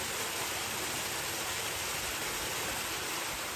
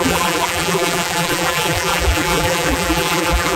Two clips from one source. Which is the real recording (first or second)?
first